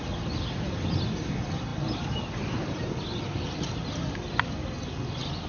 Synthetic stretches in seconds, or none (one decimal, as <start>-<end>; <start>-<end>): none